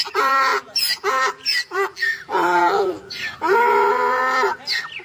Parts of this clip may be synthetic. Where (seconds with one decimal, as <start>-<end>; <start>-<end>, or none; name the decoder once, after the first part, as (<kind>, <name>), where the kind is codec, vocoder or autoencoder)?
0.0-4.2 (vocoder, BigVGAN v2)